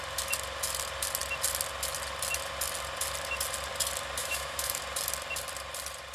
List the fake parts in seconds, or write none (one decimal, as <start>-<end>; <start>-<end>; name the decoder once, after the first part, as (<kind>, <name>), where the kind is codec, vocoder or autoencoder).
4.2-4.8 (autoencoder, DAC-VAE)